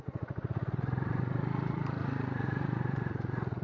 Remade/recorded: remade